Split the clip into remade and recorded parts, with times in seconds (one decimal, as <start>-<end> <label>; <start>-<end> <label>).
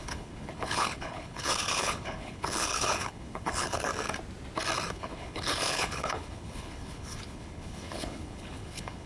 0.0-3.9 remade; 3.9-4.9 recorded; 4.9-9.1 remade